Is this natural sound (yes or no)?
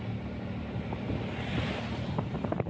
yes